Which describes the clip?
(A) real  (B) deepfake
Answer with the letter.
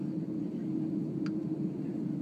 A